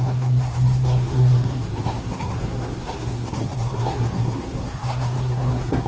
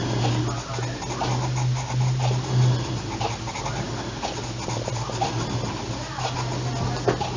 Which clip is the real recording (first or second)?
second